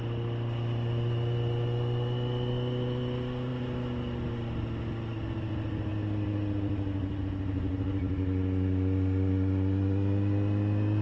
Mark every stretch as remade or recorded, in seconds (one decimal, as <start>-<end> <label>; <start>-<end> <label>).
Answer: 0.0-11.0 recorded